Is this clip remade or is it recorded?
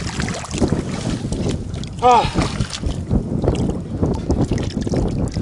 recorded